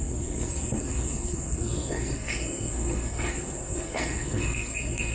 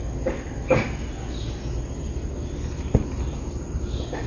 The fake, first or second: first